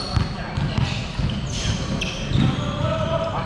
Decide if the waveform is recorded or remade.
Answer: recorded